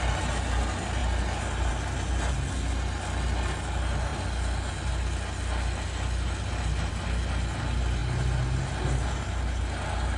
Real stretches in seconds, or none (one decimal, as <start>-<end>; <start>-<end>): 0.0-10.2